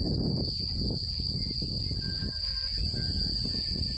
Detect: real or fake real